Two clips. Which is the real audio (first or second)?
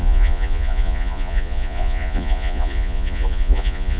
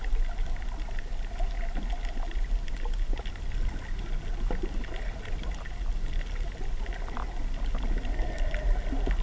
second